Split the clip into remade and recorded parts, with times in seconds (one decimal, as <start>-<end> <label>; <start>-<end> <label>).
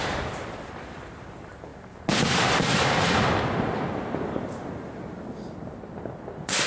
0.0-6.7 recorded